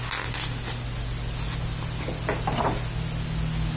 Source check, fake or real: real